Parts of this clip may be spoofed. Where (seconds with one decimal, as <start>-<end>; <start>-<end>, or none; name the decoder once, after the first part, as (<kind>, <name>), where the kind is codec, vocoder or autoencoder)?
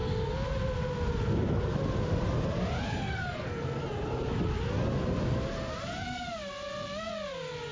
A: 2.9-3.8 (codec, SNAC)